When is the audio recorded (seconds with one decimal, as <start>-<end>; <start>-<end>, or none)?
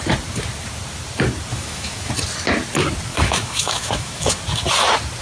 0.0-1.5; 2.1-3.1; 4.4-5.2